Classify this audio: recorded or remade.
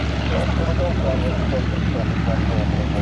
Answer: recorded